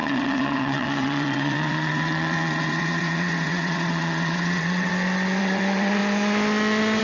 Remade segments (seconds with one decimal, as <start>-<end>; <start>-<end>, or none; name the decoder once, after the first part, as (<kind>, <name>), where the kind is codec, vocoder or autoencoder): 0.0-4.9 (vocoder, WaveNeXt); 5.4-6.0